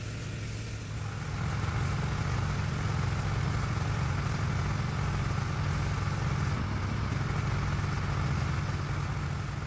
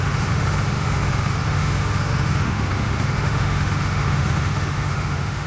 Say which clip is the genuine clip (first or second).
first